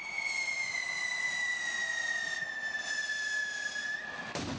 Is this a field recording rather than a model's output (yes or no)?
yes